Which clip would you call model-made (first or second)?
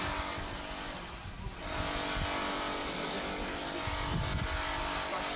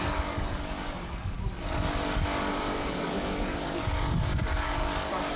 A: second